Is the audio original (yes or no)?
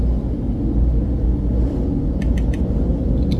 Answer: yes